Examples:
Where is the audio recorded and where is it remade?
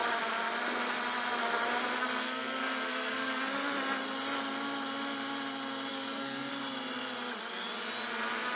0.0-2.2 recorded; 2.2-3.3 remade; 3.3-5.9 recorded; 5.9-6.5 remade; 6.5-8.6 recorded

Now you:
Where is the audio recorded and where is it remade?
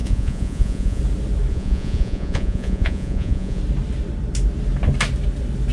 0.0-1.0 remade; 1.0-1.5 recorded; 1.5-3.6 remade; 3.6-5.7 recorded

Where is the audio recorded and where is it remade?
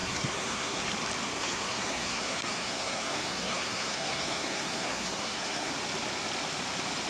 0.0-0.8 remade; 0.8-1.4 recorded; 1.4-5.7 remade; 5.7-7.1 recorded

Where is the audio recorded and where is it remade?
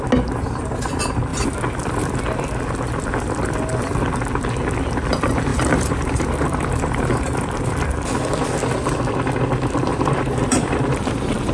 0.0-5.5 recorded; 5.5-7.5 remade; 7.5-9.9 recorded; 9.9-11.5 remade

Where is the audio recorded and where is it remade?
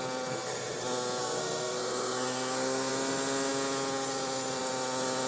0.0-1.2 recorded; 1.2-2.9 remade; 2.9-5.3 recorded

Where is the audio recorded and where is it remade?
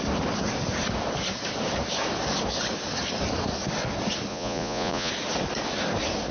0.0-4.3 recorded; 4.3-5.1 remade; 5.1-6.3 recorded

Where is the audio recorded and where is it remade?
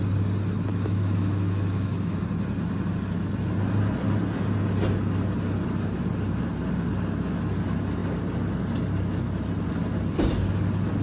0.0-0.7 recorded; 0.7-2.2 remade; 2.2-11.0 recorded